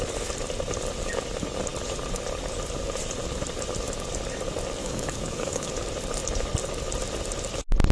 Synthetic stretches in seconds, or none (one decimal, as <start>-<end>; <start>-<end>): 4.8-5.7